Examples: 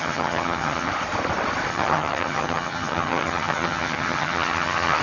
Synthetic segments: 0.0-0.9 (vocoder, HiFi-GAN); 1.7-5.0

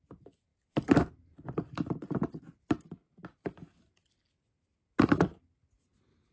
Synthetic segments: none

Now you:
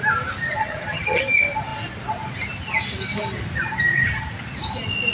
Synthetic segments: 0.6-1.2 (vocoder, HiFi-GAN)